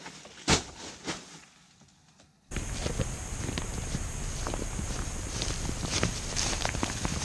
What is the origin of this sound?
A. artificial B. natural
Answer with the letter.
B